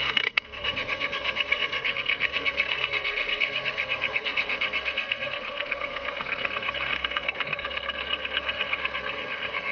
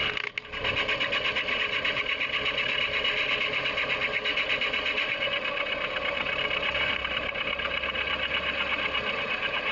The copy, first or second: first